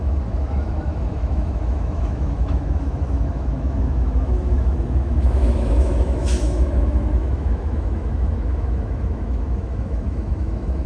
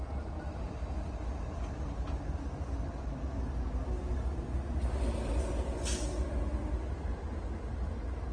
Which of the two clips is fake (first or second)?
first